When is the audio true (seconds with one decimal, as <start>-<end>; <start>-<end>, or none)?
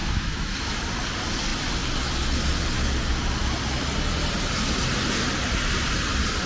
0.8-6.5